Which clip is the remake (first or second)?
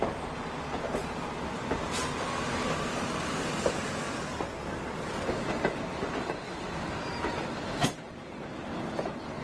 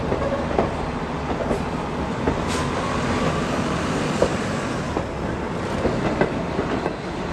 second